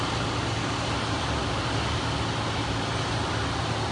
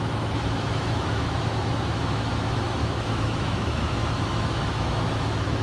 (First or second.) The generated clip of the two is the second